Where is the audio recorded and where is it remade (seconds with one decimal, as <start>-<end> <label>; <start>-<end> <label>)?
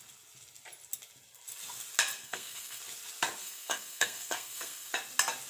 0.0-2.2 recorded; 2.2-2.8 remade; 2.8-3.4 recorded; 3.4-4.9 remade; 4.9-5.5 recorded